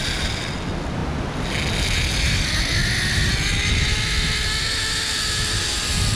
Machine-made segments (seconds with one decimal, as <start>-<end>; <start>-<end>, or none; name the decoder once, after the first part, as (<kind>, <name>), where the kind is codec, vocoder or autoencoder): none